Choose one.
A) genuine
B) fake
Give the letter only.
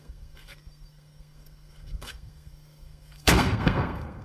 B